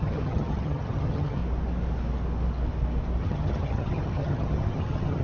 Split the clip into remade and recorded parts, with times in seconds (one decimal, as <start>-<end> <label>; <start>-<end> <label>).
0.0-1.4 remade; 1.4-3.2 recorded; 3.2-5.2 remade